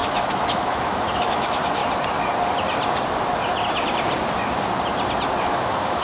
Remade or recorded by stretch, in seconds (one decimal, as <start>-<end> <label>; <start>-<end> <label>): 0.0-1.8 remade; 1.8-5.4 recorded; 5.4-6.0 remade